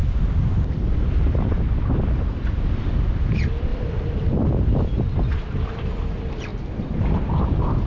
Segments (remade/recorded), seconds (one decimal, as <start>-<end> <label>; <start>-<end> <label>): 0.0-1.4 remade; 1.4-3.7 recorded; 3.7-4.5 remade; 4.5-6.5 recorded; 6.5-7.4 remade; 7.4-7.9 recorded